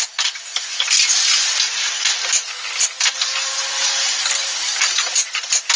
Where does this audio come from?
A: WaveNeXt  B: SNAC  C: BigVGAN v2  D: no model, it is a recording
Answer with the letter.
D